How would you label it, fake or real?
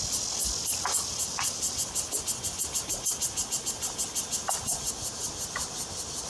real